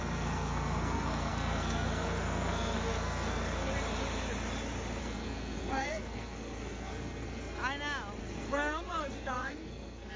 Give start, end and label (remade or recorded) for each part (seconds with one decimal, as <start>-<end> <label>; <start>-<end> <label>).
0.0-3.7 remade; 3.7-5.0 recorded; 5.0-7.6 remade; 7.6-8.2 recorded; 8.2-10.2 remade